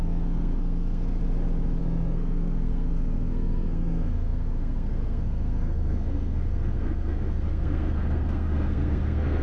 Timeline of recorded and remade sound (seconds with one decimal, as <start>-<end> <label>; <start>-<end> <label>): 0.0-1.2 remade; 1.2-1.8 recorded; 1.8-9.4 remade